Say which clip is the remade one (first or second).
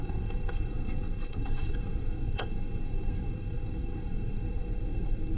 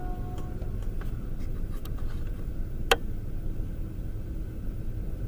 first